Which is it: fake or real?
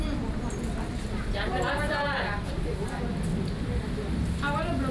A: real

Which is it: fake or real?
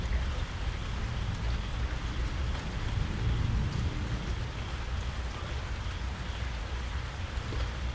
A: real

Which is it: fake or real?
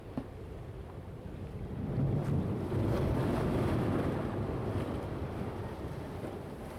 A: fake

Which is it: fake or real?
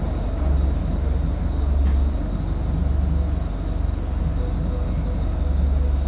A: real